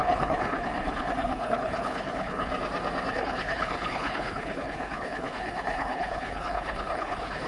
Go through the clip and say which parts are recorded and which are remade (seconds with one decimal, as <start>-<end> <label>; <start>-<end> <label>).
0.0-2.5 remade; 2.5-3.1 recorded; 3.1-7.5 remade

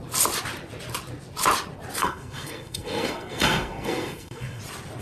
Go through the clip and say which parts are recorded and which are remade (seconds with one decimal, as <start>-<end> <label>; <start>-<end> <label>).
0.0-2.0 recorded; 2.0-4.6 remade; 4.6-5.0 recorded

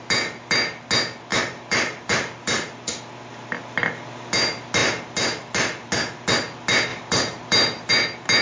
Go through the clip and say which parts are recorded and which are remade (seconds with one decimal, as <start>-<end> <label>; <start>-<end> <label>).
0.0-1.3 recorded; 1.3-3.0 remade; 3.0-6.9 recorded; 6.9-7.9 remade; 7.9-8.4 recorded

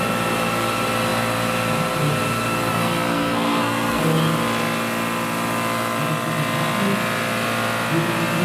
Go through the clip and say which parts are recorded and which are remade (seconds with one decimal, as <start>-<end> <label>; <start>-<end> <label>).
0.0-2.7 recorded; 2.7-4.0 remade; 4.0-8.4 recorded